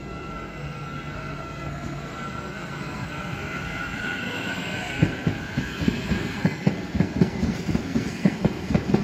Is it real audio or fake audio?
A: fake